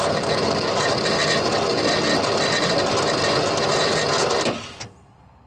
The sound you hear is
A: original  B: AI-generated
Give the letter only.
A